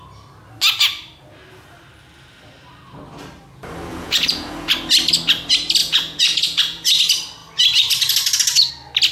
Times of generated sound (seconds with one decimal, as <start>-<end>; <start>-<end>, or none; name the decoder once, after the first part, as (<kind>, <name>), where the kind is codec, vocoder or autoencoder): 3.9-4.7 (vocoder, Vocos); 5.8-7.0